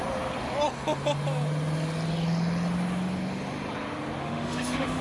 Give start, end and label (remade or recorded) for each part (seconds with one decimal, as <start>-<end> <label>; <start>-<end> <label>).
0.0-4.2 recorded; 4.2-5.0 remade